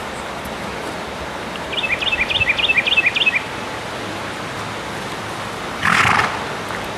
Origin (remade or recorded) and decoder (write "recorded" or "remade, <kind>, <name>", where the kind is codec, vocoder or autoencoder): recorded